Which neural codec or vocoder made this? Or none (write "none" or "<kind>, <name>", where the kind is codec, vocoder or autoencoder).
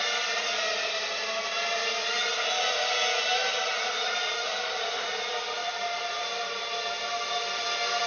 vocoder, BigVGAN v2